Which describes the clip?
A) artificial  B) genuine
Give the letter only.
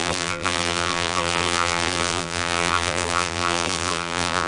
A